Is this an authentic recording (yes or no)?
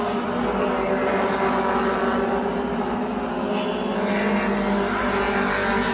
yes